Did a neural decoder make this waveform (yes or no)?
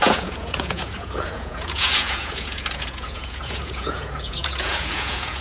yes